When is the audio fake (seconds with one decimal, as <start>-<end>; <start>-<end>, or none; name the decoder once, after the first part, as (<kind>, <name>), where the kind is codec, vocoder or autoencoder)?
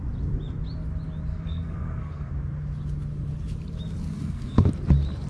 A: 1.3-2.3 (codec, SNAC); 4.1-4.7